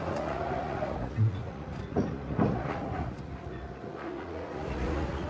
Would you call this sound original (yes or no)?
no